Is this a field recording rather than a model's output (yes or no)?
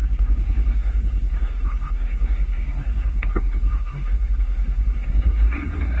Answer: no